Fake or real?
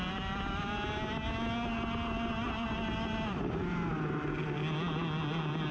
real